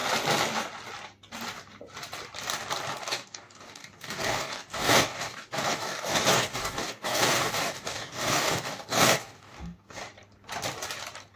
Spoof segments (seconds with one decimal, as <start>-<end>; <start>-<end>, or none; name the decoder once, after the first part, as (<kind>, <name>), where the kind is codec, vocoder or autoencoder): 3.0-10.0 (codec, DAC)